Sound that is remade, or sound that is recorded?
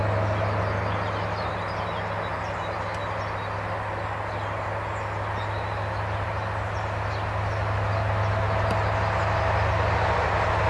recorded